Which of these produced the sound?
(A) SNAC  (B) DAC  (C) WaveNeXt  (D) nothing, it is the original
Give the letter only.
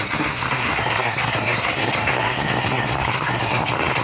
A